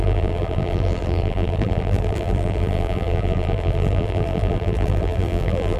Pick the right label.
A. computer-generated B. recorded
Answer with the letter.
A